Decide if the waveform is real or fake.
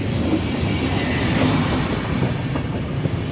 real